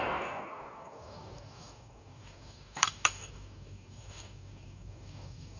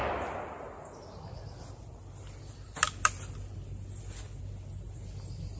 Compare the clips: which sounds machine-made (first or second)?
first